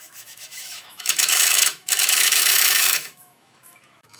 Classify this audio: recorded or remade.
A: remade